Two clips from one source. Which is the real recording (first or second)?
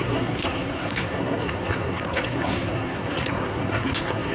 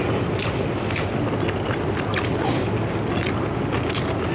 second